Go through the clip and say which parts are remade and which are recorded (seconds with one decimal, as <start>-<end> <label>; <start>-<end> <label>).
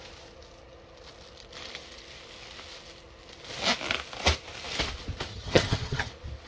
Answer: 0.0-5.3 recorded; 5.3-6.1 remade; 6.1-6.5 recorded